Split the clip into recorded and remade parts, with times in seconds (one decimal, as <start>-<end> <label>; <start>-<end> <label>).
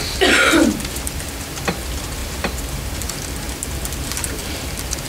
0.0-4.4 recorded; 4.4-5.1 remade